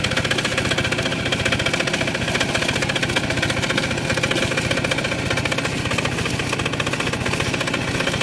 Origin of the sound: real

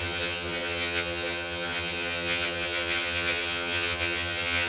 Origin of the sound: fake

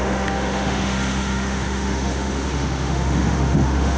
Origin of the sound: fake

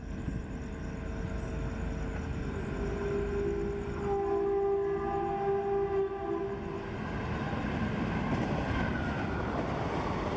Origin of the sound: real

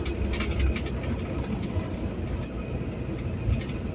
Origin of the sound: real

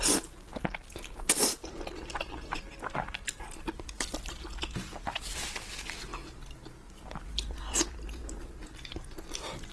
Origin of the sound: real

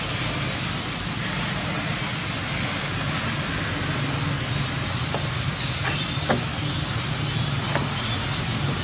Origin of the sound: real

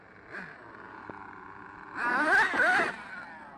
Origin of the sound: real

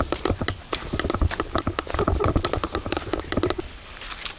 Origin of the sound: real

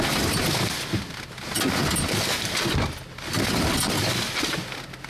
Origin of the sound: real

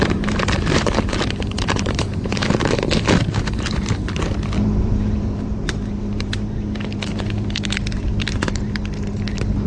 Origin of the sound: fake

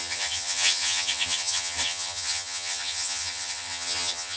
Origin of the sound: fake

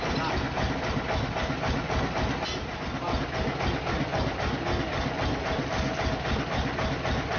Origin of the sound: real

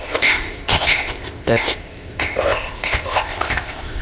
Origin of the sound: fake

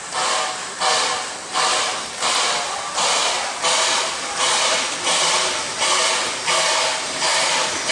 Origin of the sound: real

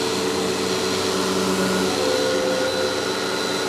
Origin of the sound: real